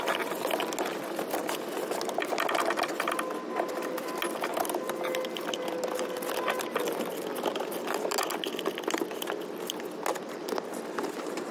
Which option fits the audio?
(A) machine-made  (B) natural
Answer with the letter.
B